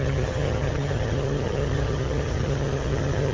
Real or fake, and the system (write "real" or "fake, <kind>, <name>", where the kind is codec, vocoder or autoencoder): fake, vocoder, HiFi-GAN